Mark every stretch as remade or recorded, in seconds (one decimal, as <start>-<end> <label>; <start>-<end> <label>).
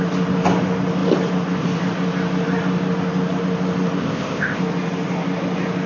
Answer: 0.0-4.0 recorded; 4.0-4.6 remade; 4.6-5.9 recorded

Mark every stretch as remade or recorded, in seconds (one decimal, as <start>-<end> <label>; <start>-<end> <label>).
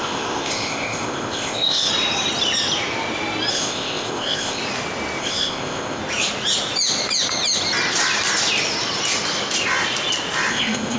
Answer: 0.0-1.9 remade; 1.9-3.5 recorded; 3.5-4.6 remade; 4.6-5.2 recorded; 5.2-6.0 remade; 6.0-10.5 recorded; 10.5-11.0 remade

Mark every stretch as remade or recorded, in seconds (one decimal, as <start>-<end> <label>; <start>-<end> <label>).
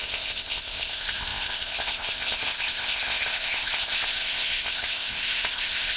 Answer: 0.0-6.0 remade